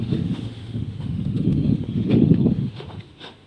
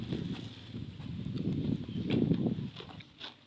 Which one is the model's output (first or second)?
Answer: first